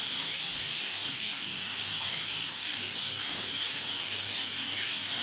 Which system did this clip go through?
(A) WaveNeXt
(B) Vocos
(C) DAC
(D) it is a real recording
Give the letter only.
C